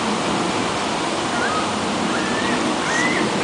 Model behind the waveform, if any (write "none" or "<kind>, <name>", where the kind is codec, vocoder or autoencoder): none